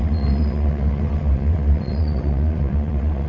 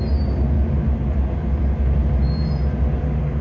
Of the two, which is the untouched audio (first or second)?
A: second